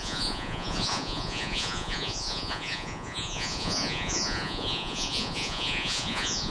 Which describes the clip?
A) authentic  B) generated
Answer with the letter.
B